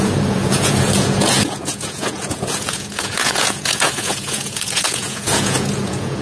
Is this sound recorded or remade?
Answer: remade